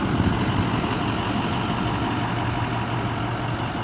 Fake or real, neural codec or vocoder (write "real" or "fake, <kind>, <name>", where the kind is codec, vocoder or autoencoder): real